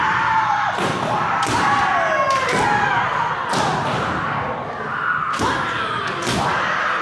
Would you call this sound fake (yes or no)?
no